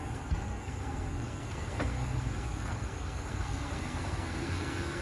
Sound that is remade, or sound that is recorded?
remade